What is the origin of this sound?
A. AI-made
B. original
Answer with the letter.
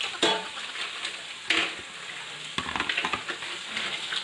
B